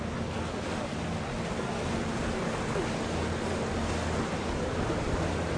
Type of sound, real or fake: real